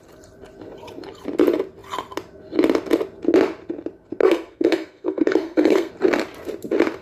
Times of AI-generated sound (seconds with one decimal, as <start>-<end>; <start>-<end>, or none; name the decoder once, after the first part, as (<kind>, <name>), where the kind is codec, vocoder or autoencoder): 4.2-5.9 (codec, SNAC)